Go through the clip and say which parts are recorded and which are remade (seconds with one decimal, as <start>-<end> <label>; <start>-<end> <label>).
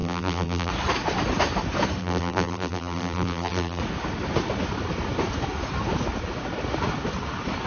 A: 0.0-0.7 remade; 0.7-2.0 recorded; 2.0-3.8 remade; 3.8-7.7 recorded